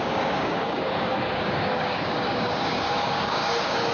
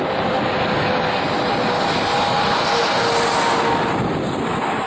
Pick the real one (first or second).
second